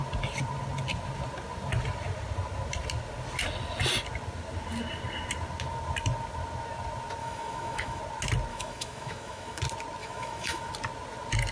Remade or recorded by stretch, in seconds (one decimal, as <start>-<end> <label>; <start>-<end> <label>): 0.0-7.2 recorded; 7.2-8.0 remade; 8.0-8.5 recorded; 8.5-9.6 remade; 9.6-10.0 recorded; 10.0-10.7 remade; 10.7-11.5 recorded